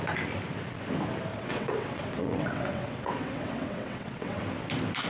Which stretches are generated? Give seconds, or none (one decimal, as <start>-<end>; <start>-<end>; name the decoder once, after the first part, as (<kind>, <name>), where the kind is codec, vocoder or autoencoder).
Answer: 1.3-4.4 (vocoder, WaveNeXt)

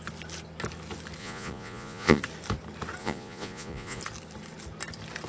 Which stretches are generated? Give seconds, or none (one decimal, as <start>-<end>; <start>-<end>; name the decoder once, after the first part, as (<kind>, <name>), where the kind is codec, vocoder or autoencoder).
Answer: 1.2-2.2 (vocoder, Vocos); 3.0-4.0